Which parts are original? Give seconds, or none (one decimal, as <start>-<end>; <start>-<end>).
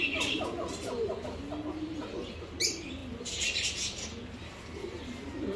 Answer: 0.0-5.6